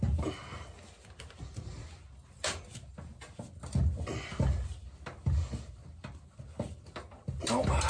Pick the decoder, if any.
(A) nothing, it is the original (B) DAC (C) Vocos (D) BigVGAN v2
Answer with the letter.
A